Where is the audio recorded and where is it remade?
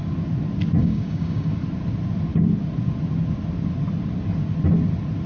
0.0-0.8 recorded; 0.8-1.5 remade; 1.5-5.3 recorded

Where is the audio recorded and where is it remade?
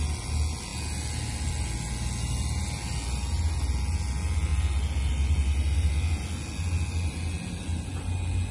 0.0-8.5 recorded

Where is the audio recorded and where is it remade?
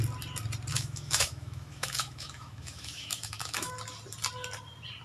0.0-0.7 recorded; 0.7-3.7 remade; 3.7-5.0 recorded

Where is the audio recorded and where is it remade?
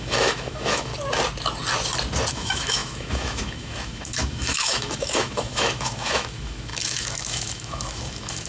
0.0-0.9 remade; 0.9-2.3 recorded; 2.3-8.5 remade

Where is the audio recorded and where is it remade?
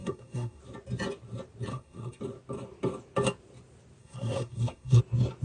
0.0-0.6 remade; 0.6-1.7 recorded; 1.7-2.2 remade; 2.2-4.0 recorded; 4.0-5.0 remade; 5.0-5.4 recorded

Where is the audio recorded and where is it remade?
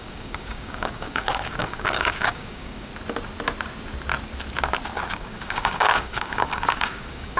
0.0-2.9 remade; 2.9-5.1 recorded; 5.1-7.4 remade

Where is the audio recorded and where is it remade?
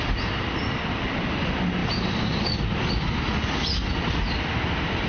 0.0-5.1 recorded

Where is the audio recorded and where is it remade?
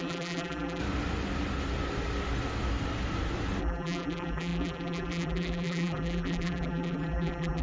0.0-0.8 remade; 0.8-3.6 recorded; 3.6-7.6 remade